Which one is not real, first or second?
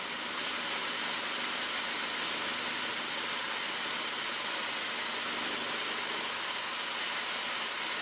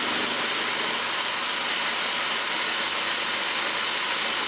first